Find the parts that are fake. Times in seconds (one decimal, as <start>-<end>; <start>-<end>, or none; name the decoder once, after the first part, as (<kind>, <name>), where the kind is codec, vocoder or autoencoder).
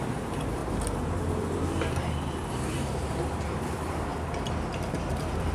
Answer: 0.0-0.6 (vocoder, BigVGAN v2); 2.5-4.1; 5.0-5.5